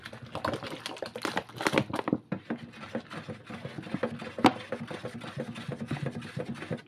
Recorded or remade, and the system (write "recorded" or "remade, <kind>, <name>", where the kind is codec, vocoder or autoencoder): recorded